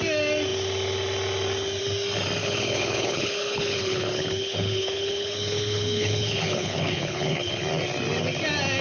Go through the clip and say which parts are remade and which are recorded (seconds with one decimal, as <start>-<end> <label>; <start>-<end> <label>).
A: 0.0-2.4 recorded; 2.4-7.6 remade; 7.6-8.8 recorded